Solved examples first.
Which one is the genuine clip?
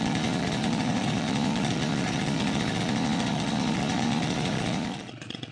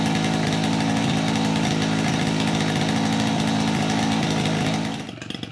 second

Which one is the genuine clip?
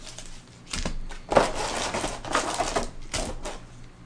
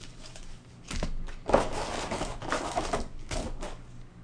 first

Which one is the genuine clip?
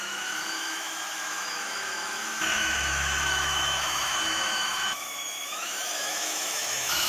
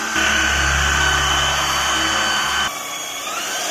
second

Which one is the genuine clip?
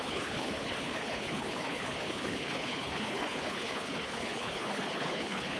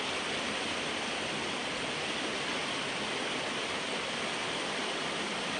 second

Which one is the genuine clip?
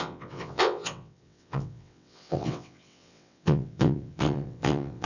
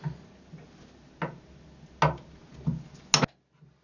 second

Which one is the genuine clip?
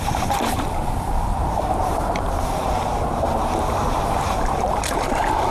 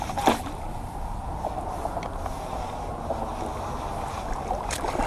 second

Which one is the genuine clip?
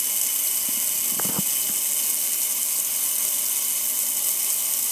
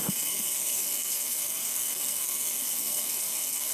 first